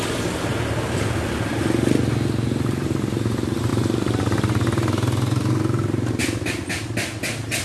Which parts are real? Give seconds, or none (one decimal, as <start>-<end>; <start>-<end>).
0.0-7.6